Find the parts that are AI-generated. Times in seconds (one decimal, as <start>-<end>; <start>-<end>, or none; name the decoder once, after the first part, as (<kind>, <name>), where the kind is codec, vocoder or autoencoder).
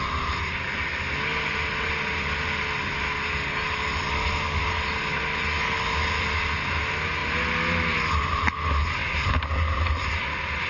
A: none